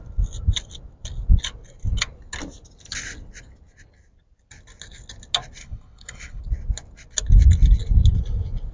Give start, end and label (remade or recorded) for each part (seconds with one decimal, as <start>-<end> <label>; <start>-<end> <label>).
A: 0.0-5.6 recorded; 5.6-6.4 remade; 6.4-8.7 recorded